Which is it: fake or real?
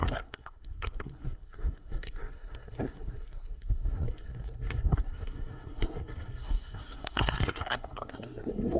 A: fake